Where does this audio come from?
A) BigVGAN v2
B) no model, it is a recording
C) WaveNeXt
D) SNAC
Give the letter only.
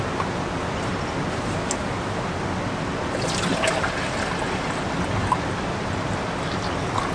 B